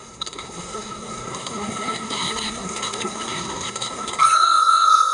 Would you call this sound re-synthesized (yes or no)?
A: yes